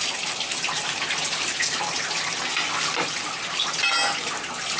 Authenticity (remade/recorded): recorded